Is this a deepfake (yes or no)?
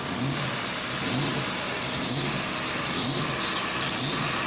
no